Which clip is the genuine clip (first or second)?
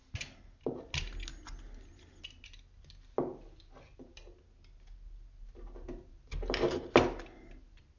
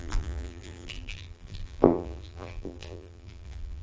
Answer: first